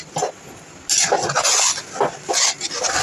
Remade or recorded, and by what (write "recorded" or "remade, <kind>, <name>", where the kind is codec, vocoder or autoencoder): recorded